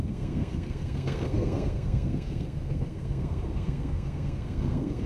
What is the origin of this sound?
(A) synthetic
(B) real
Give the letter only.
A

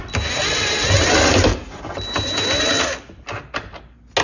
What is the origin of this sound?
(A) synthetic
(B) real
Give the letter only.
B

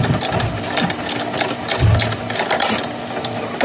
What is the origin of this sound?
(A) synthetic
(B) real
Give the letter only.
B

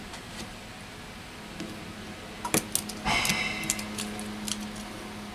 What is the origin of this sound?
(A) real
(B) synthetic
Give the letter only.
A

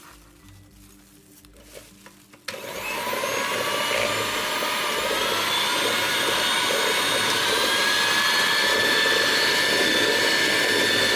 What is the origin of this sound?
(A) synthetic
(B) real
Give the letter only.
B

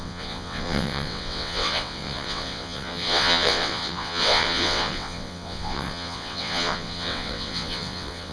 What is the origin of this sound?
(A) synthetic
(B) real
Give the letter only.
A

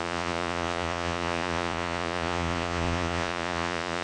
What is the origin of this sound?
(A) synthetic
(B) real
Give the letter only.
A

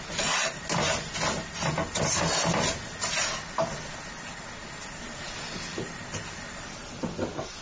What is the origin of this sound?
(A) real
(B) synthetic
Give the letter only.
A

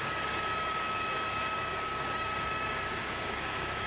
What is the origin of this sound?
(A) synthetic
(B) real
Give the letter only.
A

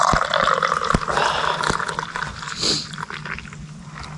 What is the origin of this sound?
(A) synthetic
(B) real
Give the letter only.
B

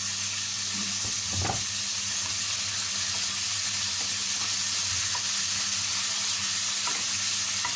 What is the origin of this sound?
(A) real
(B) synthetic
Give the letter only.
A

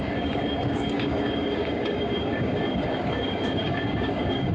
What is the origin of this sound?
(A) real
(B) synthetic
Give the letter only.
B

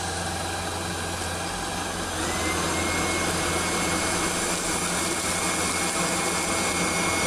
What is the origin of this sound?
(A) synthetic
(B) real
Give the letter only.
B